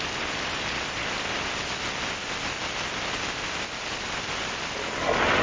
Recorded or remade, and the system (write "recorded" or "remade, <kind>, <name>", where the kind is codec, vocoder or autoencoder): recorded